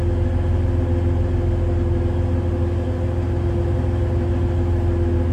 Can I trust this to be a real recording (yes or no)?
yes